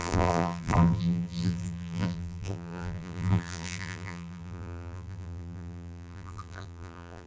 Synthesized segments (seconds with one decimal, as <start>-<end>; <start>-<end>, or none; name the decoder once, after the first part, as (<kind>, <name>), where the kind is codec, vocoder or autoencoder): 0.0-7.3 (vocoder, BigVGAN v2)